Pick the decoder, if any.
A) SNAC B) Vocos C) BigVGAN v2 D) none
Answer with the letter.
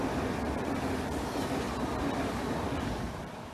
C